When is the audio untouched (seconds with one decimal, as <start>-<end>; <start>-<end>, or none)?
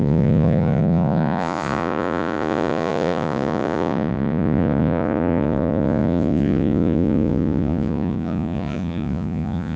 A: none